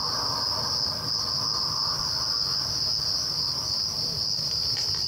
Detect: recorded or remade recorded